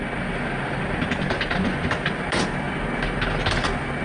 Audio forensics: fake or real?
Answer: real